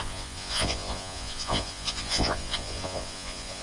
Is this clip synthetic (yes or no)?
yes